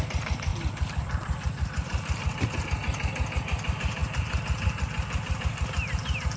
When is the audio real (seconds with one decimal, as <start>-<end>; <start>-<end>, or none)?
0.0-0.5; 2.6-6.4